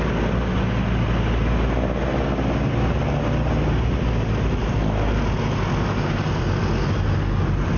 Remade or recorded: recorded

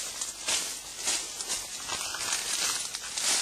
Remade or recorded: recorded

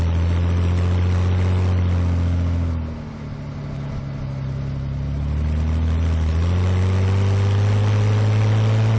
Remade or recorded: recorded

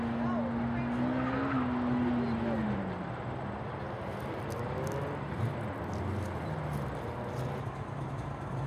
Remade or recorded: recorded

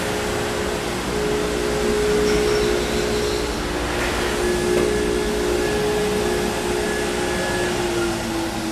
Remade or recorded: recorded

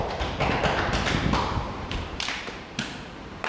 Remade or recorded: remade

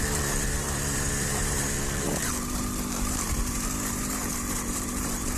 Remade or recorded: remade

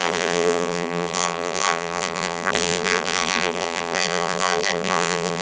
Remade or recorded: remade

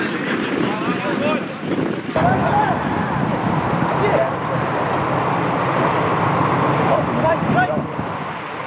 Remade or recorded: remade